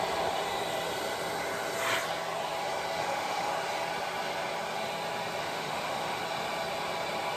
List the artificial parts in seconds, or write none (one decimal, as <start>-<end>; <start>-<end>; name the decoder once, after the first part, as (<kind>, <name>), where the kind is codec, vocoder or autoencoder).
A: 3.0-3.5 (autoencoder, DAC-VAE); 5.4-6.2